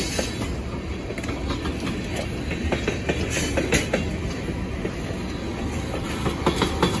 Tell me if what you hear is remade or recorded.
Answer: recorded